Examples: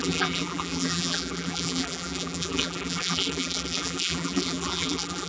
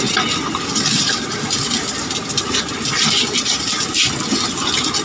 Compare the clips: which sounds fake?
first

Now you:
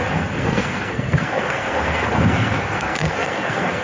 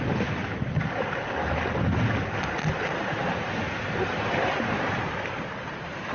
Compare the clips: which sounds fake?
first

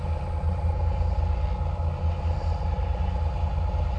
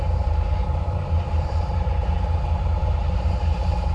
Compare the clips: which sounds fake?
second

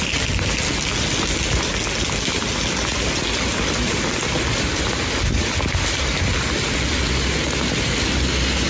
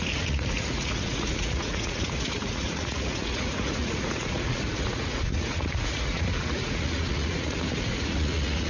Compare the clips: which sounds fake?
second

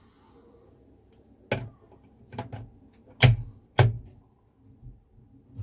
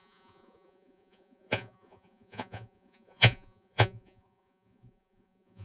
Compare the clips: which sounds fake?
second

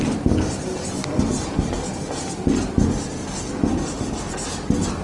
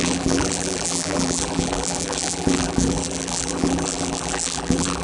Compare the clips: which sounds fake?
second